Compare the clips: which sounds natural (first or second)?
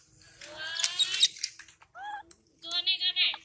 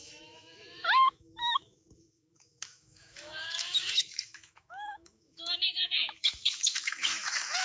first